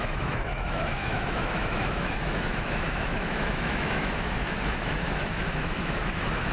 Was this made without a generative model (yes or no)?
no